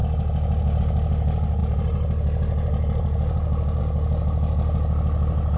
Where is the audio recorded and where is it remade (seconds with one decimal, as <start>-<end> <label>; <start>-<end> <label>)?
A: 0.0-1.6 recorded; 1.6-3.8 remade; 3.8-5.6 recorded

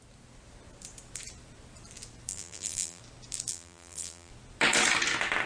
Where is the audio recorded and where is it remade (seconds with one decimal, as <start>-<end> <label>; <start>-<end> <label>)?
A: 0.0-2.3 recorded; 2.3-3.0 remade; 3.0-3.5 recorded; 3.5-4.3 remade; 4.3-5.5 recorded

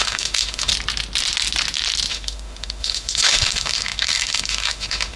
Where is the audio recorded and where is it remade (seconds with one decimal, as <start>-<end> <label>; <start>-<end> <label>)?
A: 0.0-0.7 remade; 0.7-2.1 recorded; 2.1-5.2 remade

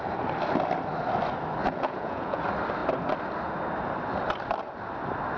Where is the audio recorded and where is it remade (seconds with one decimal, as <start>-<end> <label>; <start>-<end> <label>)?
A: 0.0-1.6 recorded; 1.6-2.4 remade; 2.4-5.4 recorded

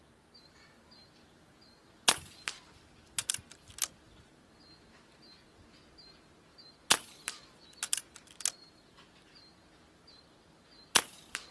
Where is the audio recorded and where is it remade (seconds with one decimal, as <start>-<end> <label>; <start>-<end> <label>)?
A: 0.0-11.5 recorded

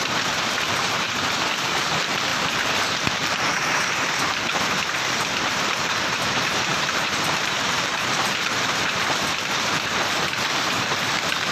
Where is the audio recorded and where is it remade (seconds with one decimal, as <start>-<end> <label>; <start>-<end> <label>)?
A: 0.0-11.5 remade

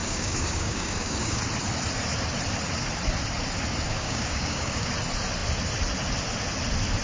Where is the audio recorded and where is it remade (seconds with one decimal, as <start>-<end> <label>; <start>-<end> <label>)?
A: 0.0-1.4 remade; 1.4-3.9 recorded; 3.9-4.9 remade; 4.9-7.0 recorded

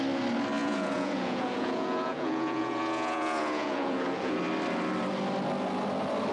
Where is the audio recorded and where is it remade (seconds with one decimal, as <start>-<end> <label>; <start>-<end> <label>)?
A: 0.0-0.6 recorded; 0.6-4.4 remade; 4.4-6.3 recorded